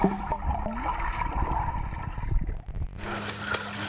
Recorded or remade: recorded